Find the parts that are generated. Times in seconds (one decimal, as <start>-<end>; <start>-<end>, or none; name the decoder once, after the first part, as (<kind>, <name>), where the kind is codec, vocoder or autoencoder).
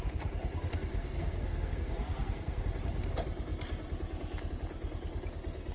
0.9-2.6 (codec, SNAC)